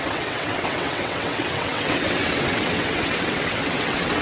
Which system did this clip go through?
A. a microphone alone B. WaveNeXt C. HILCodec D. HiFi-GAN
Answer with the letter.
B